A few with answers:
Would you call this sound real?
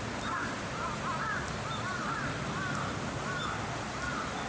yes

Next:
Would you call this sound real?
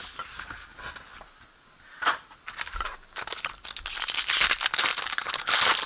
yes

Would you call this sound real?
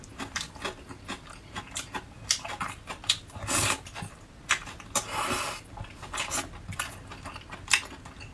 yes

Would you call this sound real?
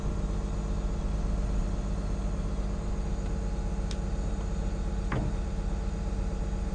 yes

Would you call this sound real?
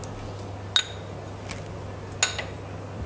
yes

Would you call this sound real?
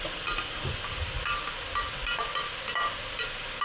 yes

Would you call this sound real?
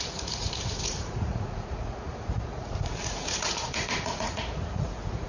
no